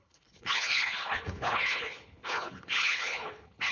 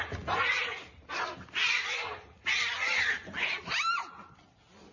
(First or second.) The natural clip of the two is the second